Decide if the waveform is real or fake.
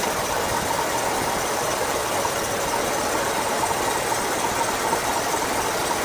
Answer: real